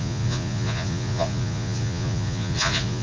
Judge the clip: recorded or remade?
remade